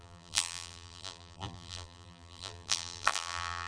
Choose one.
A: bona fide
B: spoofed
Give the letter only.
B